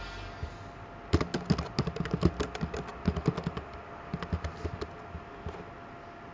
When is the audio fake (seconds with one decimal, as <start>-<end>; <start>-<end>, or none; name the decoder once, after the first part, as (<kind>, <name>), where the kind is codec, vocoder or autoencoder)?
none